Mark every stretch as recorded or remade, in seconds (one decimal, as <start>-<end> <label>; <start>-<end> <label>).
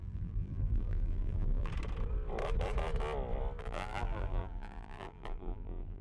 0.0-1.7 remade; 1.7-3.6 recorded; 3.6-6.0 remade